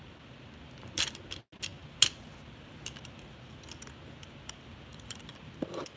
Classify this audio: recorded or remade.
recorded